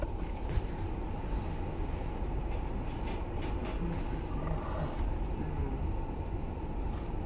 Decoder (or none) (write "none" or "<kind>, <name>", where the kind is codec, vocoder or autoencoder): none